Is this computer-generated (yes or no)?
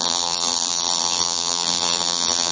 yes